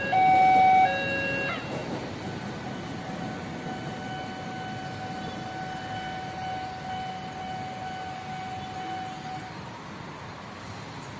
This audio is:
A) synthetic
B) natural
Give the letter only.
B